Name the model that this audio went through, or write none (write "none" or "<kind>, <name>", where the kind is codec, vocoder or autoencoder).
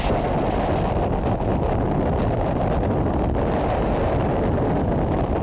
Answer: none